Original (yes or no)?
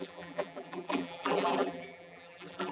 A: no